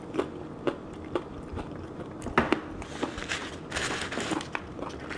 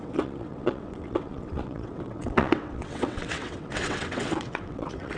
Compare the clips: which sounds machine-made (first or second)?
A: second